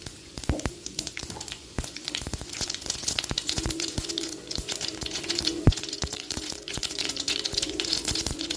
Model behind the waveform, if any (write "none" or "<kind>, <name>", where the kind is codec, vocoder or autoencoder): vocoder, Vocos